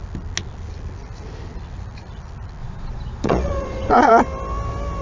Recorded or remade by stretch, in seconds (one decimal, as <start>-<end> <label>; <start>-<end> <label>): 0.0-2.6 recorded; 2.6-4.1 remade; 4.1-5.0 recorded